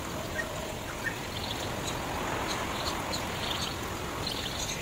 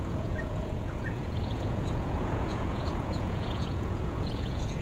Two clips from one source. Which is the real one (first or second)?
first